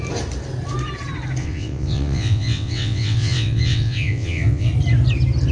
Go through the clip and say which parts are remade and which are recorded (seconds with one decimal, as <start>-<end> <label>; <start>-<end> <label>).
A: 0.0-1.4 recorded; 1.4-4.7 remade; 4.7-5.5 recorded